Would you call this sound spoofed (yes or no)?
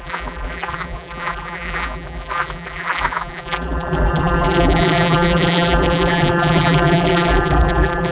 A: yes